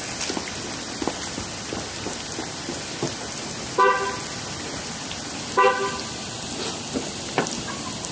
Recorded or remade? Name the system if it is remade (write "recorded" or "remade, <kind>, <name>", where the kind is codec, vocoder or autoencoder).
recorded